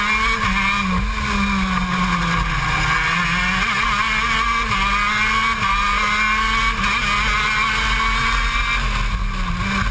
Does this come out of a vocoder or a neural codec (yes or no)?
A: no